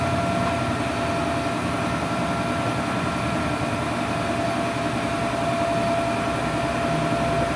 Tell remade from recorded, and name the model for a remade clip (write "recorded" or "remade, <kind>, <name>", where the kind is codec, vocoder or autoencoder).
recorded